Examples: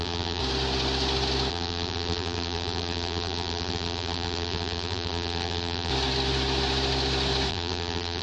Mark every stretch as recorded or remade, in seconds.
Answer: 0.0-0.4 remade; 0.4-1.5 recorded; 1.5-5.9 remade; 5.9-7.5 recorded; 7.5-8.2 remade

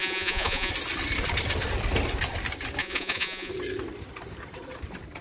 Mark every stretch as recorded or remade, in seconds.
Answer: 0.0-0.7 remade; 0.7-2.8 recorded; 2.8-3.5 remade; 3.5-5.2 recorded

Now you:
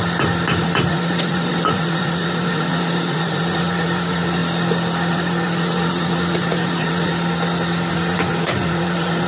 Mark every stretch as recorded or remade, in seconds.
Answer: 0.0-0.6 recorded; 0.6-4.4 remade; 4.4-5.1 recorded; 5.1-7.1 remade; 7.1-7.9 recorded; 7.9-9.3 remade

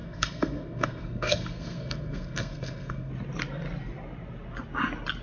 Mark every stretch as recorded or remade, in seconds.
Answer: 0.0-3.1 remade; 3.1-5.2 recorded

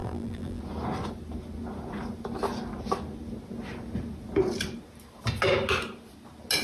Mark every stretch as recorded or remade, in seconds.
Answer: 0.0-0.6 remade; 0.6-6.6 recorded

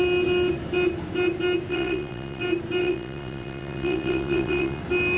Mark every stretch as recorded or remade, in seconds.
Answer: 0.0-1.7 recorded; 1.7-2.4 remade; 2.4-2.8 recorded; 2.8-4.8 remade; 4.8-5.2 recorded

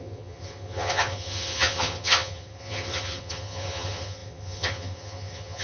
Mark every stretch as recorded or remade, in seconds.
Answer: 0.0-5.6 remade